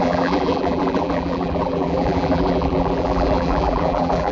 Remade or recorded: remade